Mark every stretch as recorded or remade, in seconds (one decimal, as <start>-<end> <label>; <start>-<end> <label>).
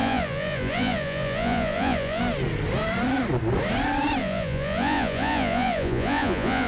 0.0-2.2 remade; 2.2-4.2 recorded; 4.2-6.7 remade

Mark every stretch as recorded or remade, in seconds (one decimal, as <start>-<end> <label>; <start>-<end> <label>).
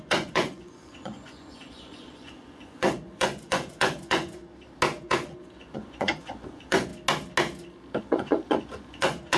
0.0-4.4 remade; 4.4-5.0 recorded; 5.0-6.9 remade; 6.9-8.0 recorded; 8.0-9.4 remade